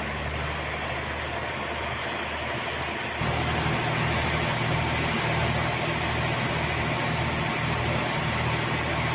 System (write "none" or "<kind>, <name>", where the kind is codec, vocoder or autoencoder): none